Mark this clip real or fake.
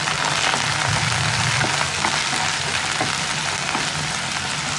real